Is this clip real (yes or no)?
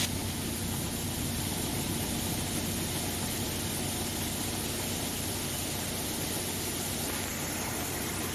yes